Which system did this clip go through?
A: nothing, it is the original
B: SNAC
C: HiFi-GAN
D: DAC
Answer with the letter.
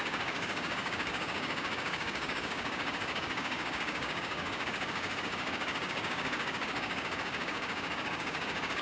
D